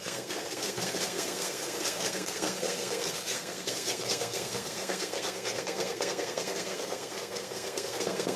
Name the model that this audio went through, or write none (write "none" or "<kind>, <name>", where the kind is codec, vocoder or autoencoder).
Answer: codec, SNAC